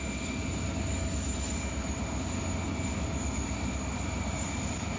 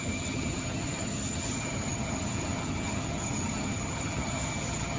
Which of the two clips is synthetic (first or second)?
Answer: second